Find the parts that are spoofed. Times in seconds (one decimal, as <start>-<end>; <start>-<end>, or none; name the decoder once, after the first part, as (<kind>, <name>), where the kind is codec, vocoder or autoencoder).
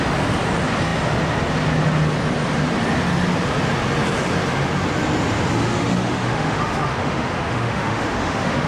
5.7-8.7 (autoencoder, DAC-VAE)